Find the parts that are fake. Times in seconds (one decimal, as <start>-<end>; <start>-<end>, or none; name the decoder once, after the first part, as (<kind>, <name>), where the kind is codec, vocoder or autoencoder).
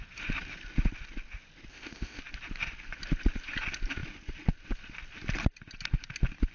1.7-2.2 (codec, ZipCodec)